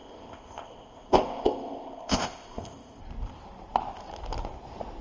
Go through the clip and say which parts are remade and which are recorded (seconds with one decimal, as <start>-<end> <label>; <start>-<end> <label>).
0.0-3.0 remade; 3.0-5.0 recorded